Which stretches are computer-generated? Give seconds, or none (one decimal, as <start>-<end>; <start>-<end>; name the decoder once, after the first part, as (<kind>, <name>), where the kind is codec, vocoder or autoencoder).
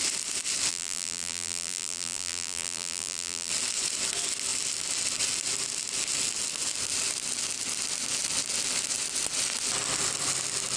0.7-3.5 (vocoder, BigVGAN v2)